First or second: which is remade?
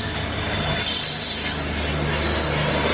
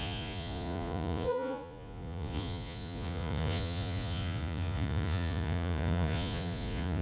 second